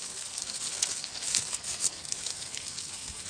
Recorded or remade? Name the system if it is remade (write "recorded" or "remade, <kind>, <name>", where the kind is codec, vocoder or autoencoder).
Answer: remade, codec, SNAC